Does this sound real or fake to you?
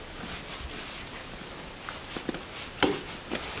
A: real